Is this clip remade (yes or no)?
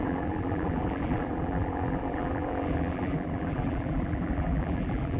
yes